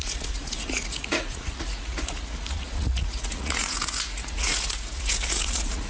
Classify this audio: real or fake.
fake